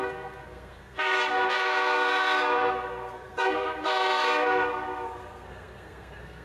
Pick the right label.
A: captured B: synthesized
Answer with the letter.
B